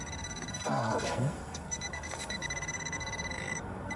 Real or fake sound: fake